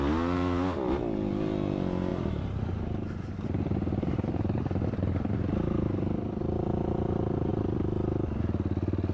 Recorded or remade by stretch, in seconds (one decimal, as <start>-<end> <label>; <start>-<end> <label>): 0.0-2.1 recorded; 2.1-6.4 remade; 6.4-9.1 recorded